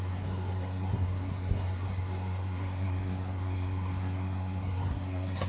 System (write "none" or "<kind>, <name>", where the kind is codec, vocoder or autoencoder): codec, SNAC